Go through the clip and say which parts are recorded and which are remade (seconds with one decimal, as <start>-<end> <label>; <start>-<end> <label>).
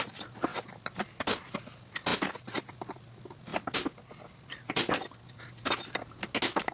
0.0-6.7 recorded